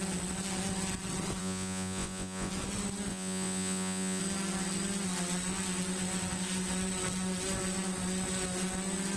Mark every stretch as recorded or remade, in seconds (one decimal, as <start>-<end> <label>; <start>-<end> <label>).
0.0-1.4 recorded; 1.4-2.5 remade; 2.5-3.1 recorded; 3.1-4.2 remade; 4.2-9.2 recorded